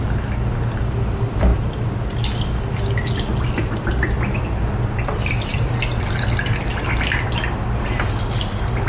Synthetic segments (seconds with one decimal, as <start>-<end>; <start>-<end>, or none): 3.3-4.4